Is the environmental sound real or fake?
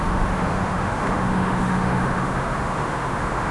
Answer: fake